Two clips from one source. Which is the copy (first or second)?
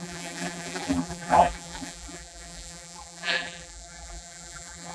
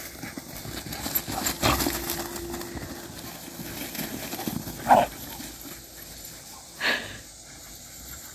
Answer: first